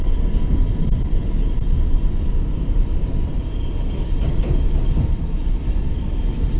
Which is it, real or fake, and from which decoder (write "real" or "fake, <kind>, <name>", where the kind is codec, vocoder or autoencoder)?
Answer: real